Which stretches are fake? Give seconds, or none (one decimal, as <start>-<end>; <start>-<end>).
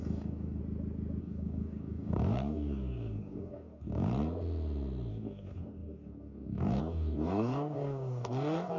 0.0-0.6; 1.2-4.1; 5.1-8.8